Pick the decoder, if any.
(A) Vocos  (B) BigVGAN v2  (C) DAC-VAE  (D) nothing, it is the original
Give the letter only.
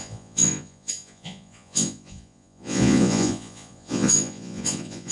A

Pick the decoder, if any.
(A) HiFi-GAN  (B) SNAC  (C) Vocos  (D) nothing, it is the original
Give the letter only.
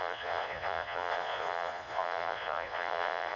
C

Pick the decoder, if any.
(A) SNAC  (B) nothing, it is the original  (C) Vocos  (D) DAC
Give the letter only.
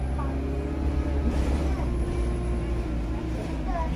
B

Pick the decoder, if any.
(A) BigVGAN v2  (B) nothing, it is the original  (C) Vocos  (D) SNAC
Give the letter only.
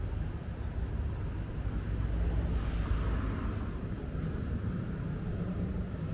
B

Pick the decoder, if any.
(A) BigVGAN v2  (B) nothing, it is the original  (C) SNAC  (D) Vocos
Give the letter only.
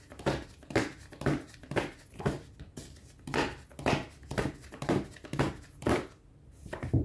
B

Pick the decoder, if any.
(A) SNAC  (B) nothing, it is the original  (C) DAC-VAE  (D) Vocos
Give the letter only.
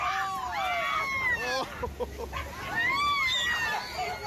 B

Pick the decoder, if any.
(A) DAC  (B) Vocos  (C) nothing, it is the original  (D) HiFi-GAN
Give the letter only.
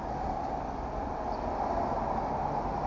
C